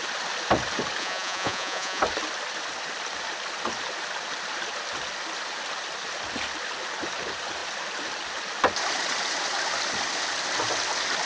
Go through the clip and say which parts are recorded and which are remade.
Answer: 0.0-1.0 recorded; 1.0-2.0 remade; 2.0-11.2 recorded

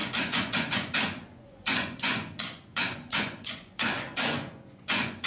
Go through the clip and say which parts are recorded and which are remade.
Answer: 0.0-5.3 remade

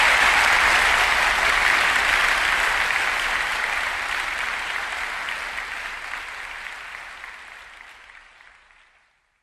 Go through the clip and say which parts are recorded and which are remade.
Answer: 0.0-9.4 recorded

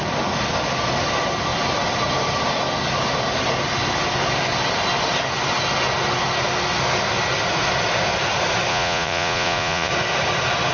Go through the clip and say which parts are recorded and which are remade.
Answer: 0.0-8.7 recorded; 8.7-9.9 remade; 9.9-10.7 recorded

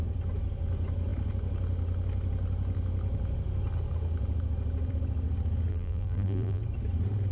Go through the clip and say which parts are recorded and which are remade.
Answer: 0.0-5.7 recorded; 5.7-6.6 remade; 6.6-7.3 recorded